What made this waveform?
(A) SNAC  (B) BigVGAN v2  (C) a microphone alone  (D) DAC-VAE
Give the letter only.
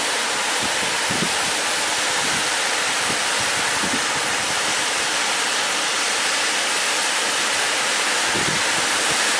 C